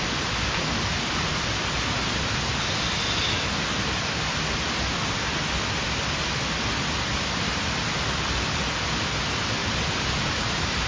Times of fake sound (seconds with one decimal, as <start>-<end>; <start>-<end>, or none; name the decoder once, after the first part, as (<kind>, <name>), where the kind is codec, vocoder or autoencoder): 9.6-10.9 (vocoder, BigVGAN v2)